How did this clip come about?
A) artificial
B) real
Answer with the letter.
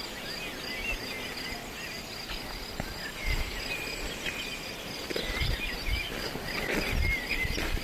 B